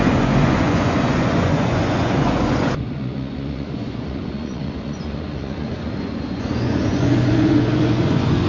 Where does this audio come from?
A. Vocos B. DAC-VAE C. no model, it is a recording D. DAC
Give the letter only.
A